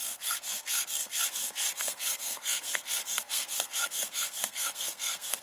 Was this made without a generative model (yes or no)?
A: no